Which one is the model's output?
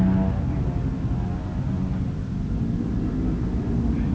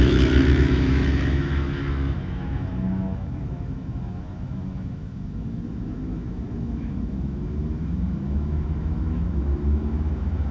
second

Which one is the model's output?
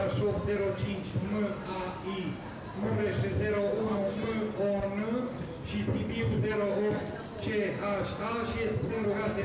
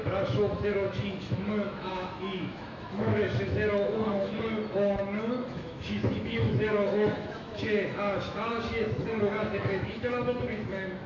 second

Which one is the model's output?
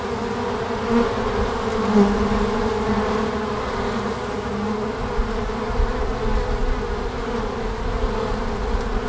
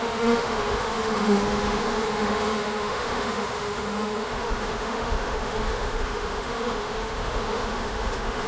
second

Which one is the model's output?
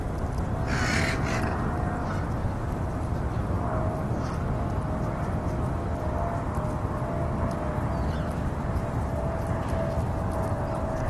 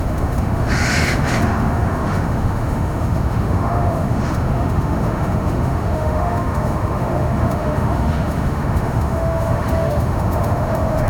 second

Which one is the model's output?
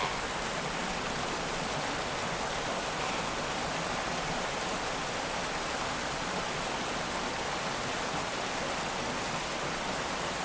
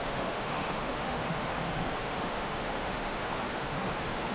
second